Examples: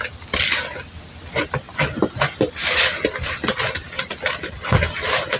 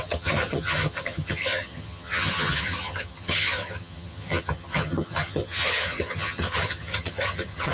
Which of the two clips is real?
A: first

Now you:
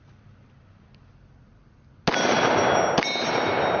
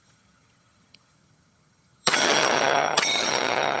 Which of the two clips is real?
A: first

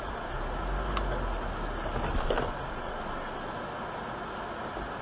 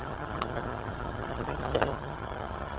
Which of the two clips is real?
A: first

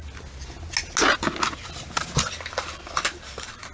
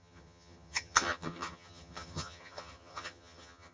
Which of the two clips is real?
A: first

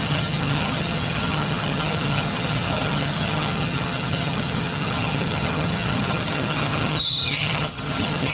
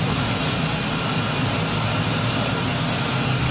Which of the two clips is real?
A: second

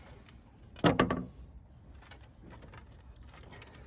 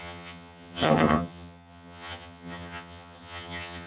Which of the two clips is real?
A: first